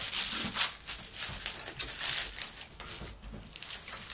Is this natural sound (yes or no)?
yes